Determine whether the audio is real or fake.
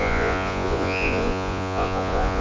fake